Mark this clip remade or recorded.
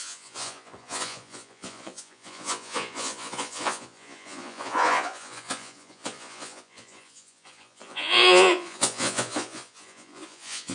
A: remade